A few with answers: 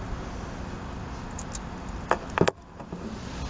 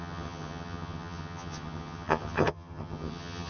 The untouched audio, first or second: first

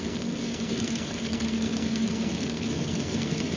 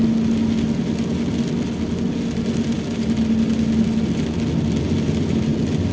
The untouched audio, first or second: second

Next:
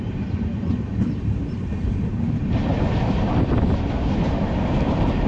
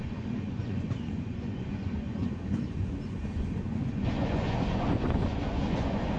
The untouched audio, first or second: first